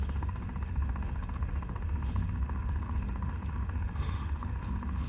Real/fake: fake